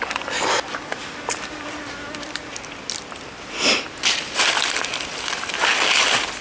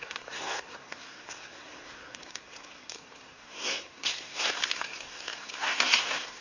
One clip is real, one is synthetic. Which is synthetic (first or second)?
second